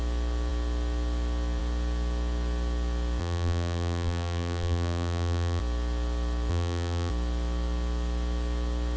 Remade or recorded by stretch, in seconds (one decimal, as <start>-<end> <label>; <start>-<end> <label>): 0.0-3.2 recorded; 3.2-5.6 remade; 5.6-6.5 recorded; 6.5-7.1 remade; 7.1-9.0 recorded